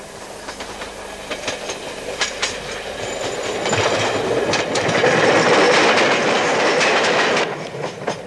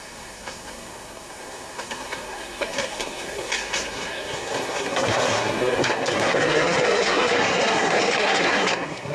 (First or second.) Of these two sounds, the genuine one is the first